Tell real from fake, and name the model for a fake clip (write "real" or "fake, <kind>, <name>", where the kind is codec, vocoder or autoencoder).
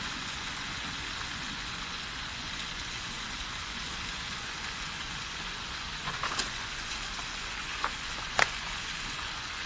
fake, vocoder, Vocos